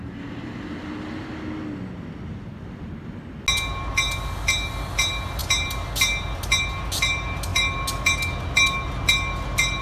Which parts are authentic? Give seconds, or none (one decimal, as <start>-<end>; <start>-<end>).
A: 0.0-9.8